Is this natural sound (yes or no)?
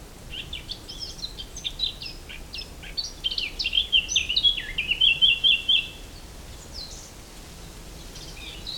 yes